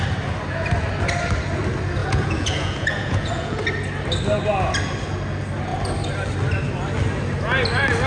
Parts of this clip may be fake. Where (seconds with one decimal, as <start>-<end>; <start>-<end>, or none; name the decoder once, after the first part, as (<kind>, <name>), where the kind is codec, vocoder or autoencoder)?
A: 2.0-3.6 (vocoder, Vocos)